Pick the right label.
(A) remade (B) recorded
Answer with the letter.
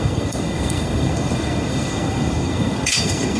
A